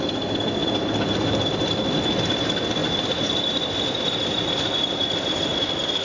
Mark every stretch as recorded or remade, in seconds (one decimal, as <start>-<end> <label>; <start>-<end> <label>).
0.0-0.6 recorded; 0.6-1.7 remade; 1.7-6.0 recorded